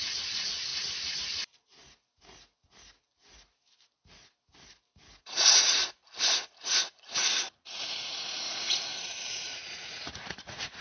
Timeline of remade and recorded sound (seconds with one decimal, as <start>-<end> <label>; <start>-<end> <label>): 0.0-0.7 remade; 0.7-5.2 recorded; 5.2-5.8 remade; 5.8-6.3 recorded; 6.3-10.8 remade